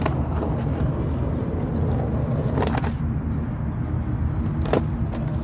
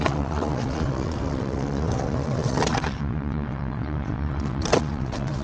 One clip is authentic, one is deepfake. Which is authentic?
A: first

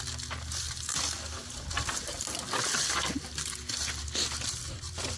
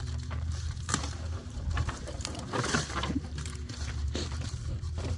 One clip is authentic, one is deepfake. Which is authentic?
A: first